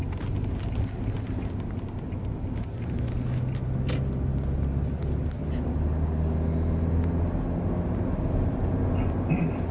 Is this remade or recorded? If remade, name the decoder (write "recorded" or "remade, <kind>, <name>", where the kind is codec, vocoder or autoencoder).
recorded